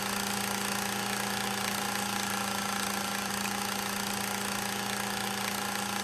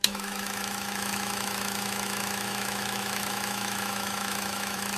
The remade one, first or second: second